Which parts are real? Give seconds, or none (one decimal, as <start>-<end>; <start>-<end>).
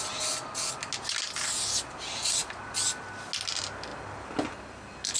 0.0-5.2